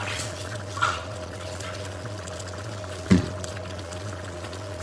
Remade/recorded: remade